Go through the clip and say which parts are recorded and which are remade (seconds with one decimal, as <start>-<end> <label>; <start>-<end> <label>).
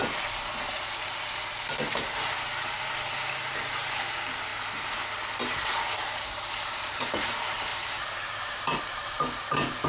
0.0-3.4 recorded; 3.4-4.5 remade; 4.5-6.1 recorded; 6.1-9.9 remade